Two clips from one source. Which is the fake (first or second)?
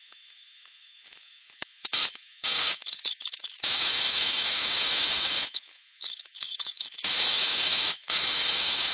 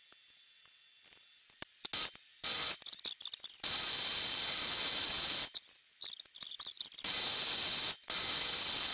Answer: first